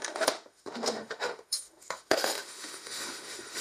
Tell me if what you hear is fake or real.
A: fake